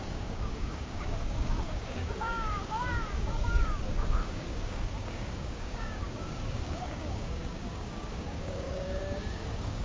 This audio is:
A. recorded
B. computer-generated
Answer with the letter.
B